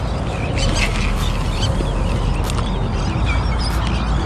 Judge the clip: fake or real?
real